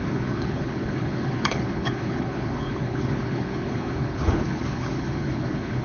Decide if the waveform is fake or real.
fake